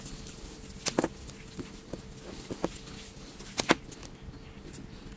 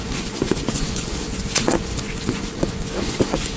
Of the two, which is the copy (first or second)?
second